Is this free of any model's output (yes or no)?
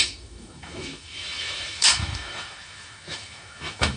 no